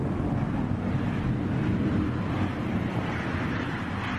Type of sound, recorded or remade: remade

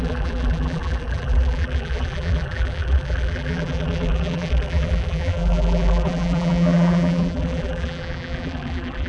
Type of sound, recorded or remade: remade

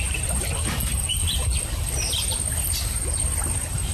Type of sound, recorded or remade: recorded